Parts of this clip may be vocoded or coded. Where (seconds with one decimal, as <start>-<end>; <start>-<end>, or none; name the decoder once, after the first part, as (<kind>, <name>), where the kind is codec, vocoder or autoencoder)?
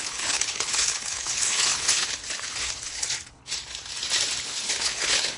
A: 0.0-3.4 (codec, HILCodec); 4.4-5.4